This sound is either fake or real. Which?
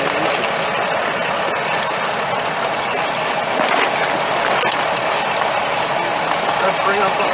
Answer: real